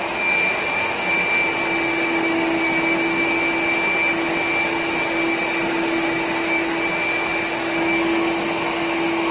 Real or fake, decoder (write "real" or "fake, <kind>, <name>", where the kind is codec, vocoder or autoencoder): real